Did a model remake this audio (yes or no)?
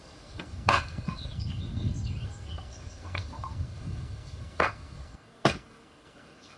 yes